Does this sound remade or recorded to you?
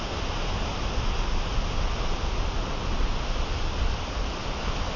recorded